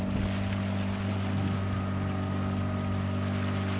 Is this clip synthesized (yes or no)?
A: no